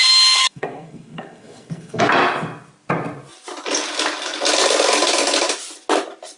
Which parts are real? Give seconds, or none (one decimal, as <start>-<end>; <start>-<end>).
0.0-0.4; 2.0-6.4